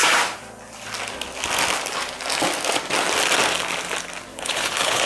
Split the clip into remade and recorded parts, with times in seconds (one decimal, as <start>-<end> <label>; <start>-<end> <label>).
0.0-4.3 recorded; 4.3-5.1 remade

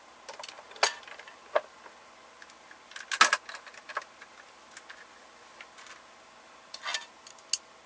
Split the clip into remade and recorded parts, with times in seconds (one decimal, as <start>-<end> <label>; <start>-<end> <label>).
0.0-7.9 recorded

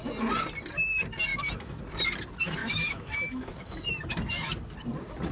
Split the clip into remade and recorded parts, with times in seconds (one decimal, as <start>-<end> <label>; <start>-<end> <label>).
0.0-1.3 recorded; 1.3-1.8 remade; 1.8-2.6 recorded; 2.6-4.5 remade; 4.5-5.3 recorded

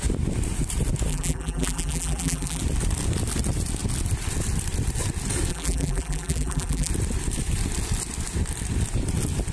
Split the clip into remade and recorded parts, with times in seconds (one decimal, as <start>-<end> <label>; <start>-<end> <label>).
0.0-1.1 recorded; 1.1-2.6 remade; 2.6-5.5 recorded; 5.5-6.9 remade; 6.9-9.5 recorded

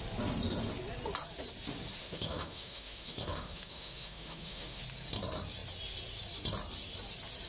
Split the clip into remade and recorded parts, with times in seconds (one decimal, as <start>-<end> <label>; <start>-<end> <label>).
0.0-2.0 recorded; 2.0-4.8 remade; 4.8-7.5 recorded

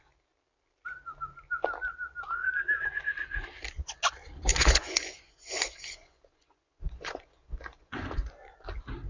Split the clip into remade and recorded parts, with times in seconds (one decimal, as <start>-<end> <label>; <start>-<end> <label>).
0.0-4.5 recorded; 4.5-8.3 remade; 8.3-9.1 recorded

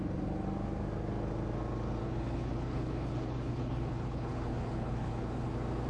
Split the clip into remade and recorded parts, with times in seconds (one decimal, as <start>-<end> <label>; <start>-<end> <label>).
0.0-2.0 recorded; 2.0-5.5 remade; 5.5-5.9 recorded

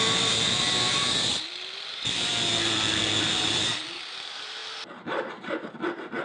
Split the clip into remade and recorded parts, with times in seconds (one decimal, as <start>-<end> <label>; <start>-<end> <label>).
0.0-6.2 remade